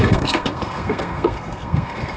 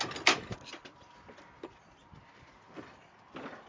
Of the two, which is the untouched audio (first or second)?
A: second